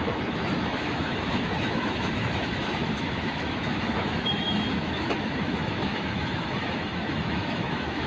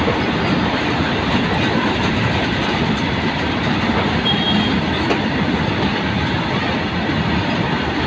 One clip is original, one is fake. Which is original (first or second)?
second